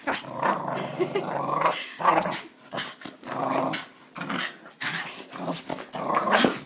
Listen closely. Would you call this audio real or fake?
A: real